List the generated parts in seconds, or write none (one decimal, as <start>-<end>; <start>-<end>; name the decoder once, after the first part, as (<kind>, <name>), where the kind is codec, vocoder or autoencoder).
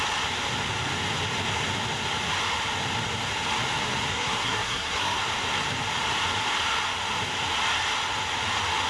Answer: 4.1-5.2 (codec, SNAC)